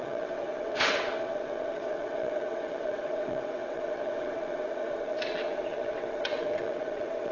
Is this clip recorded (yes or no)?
no